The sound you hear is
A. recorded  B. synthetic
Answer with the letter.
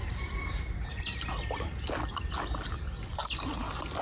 A